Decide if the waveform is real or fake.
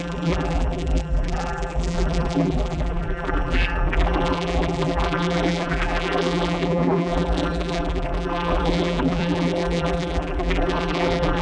fake